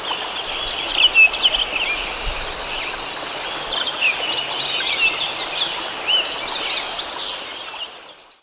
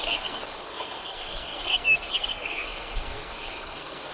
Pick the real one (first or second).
first